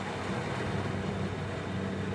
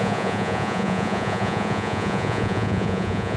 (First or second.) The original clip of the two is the first